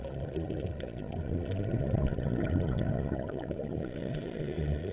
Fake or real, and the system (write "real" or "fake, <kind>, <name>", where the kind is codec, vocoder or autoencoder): fake, vocoder, Vocos